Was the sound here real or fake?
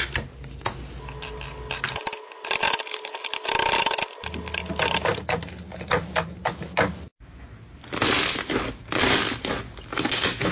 real